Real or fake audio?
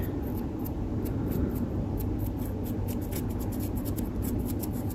real